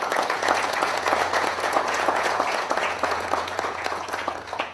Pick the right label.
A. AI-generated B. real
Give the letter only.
A